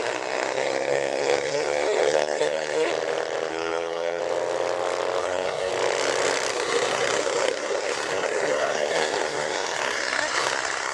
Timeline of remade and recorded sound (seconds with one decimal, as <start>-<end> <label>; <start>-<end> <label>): 0.0-2.9 remade; 2.9-3.5 recorded; 3.5-4.2 remade; 4.2-5.2 recorded; 5.2-5.7 remade; 5.7-6.5 recorded; 6.5-10.9 remade

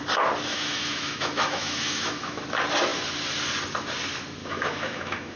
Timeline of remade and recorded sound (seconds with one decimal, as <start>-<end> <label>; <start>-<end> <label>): 0.0-0.5 recorded; 0.5-2.4 remade; 2.4-4.4 recorded; 4.4-5.4 remade

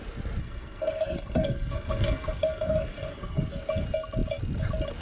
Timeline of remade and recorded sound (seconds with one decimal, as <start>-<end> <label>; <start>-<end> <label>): 0.0-0.4 recorded; 0.4-3.4 remade; 3.4-5.0 recorded

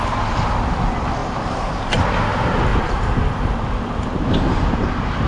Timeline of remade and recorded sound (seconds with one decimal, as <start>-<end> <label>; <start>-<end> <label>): 0.0-1.2 recorded; 1.2-2.0 remade; 2.0-2.7 recorded; 2.7-3.5 remade; 3.5-5.3 recorded